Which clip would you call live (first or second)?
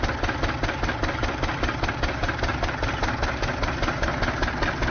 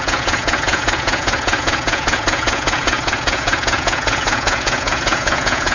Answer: first